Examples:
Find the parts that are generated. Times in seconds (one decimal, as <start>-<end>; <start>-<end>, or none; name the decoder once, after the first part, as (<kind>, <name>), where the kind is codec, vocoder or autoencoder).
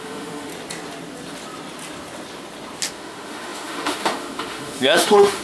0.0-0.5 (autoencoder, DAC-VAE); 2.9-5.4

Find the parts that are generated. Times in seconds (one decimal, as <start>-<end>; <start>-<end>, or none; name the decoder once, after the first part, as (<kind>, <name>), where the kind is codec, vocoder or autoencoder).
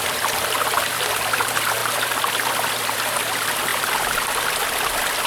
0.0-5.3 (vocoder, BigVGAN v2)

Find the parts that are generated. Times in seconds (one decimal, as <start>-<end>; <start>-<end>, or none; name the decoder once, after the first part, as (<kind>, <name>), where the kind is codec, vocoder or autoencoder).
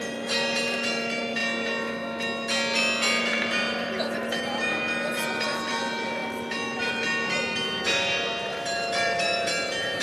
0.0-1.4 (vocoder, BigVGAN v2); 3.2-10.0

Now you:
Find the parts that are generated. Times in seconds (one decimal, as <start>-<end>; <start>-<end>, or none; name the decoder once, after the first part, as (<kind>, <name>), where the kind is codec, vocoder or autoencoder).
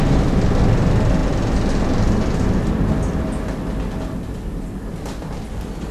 none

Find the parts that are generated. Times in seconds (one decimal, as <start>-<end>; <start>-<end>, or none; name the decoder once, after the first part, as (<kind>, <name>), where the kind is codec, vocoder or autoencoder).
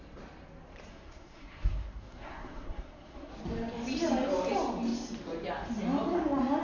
0.9-3.3 (codec, SNAC)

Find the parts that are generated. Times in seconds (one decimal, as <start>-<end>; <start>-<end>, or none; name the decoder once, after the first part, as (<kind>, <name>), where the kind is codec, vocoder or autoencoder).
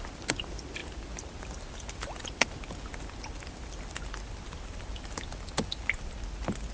none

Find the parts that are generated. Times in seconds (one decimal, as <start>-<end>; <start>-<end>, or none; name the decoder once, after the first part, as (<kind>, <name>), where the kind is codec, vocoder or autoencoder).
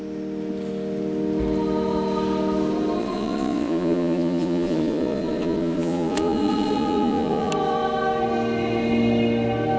3.0-7.5 (vocoder, Vocos)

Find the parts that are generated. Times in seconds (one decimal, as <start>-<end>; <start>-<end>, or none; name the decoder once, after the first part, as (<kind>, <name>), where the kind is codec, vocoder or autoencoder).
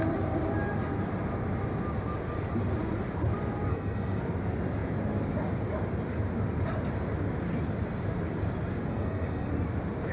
3.7-4.2 (codec, SNAC); 8.9-9.5